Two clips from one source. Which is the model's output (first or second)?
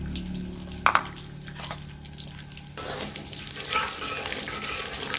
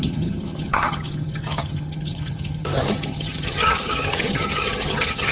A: second